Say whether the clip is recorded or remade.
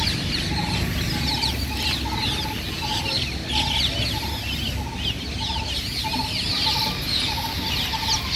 recorded